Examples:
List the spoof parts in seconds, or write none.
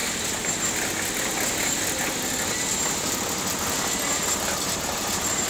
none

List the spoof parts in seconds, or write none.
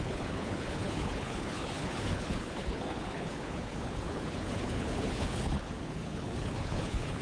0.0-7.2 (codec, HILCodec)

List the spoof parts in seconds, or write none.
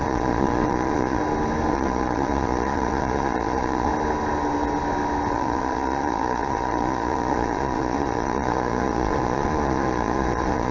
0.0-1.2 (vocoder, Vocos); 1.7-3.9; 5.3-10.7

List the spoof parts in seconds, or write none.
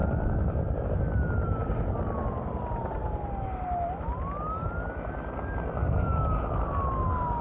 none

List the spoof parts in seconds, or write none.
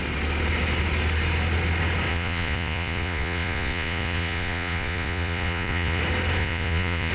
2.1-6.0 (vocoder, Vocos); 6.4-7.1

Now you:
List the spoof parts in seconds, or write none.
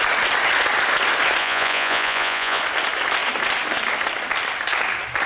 1.4-2.6 (vocoder, Vocos)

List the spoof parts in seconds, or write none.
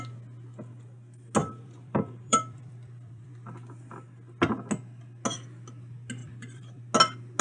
1.4-3.3 (vocoder, BigVGAN v2); 6.2-6.8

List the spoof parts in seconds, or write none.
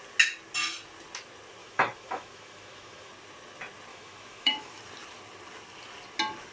1.6-3.1 (autoencoder, DAC-VAE); 3.9-4.8